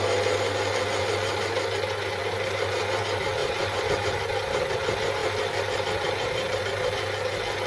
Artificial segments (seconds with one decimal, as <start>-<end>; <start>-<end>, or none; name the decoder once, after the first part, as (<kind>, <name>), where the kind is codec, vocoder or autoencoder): none